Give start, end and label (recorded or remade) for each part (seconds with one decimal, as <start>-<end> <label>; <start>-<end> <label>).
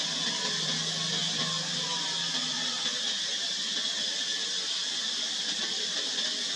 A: 0.0-6.6 recorded